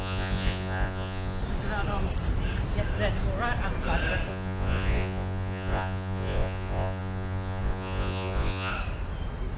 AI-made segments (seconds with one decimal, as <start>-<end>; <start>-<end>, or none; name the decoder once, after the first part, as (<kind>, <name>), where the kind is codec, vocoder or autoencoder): 0.0-1.4 (vocoder, Vocos); 4.3-8.7